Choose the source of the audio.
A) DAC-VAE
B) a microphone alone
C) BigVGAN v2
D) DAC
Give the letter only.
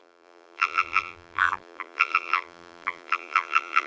C